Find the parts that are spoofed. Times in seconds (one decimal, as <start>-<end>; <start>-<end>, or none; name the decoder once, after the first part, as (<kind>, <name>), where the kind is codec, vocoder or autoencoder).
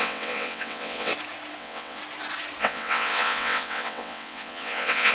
0.0-1.1 (vocoder, WaveNeXt); 1.6-2.0; 2.6-5.1